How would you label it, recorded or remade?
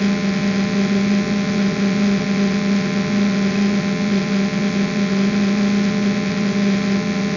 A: remade